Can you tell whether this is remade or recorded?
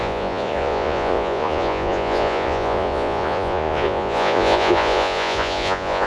remade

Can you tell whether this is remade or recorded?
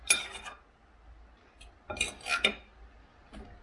recorded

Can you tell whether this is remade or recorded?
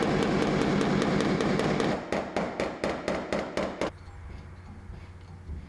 recorded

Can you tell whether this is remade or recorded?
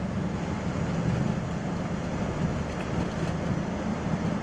recorded